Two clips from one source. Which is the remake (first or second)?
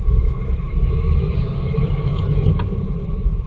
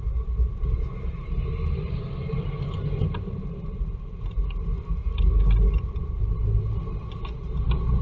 first